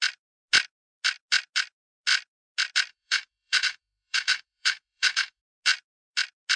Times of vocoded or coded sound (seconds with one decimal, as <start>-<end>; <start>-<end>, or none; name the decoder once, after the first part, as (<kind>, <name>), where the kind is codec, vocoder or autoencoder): 2.9-5.4 (autoencoder, DAC-VAE)